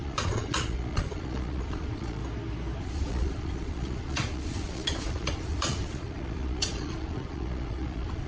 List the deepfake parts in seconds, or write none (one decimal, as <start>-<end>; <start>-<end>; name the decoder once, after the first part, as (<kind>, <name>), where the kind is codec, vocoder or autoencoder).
0.0-2.2 (vocoder, Vocos); 2.8-8.3